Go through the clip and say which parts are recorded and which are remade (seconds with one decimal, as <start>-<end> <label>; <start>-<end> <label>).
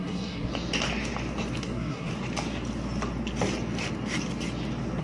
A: 0.0-0.5 remade; 0.5-1.6 recorded; 1.6-2.1 remade; 2.1-5.0 recorded